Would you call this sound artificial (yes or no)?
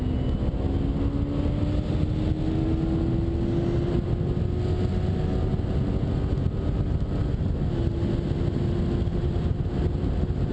no